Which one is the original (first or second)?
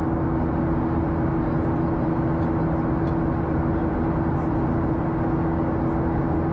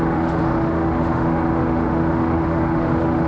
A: first